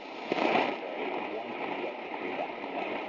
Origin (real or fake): fake